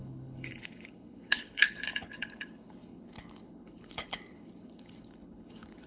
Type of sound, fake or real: fake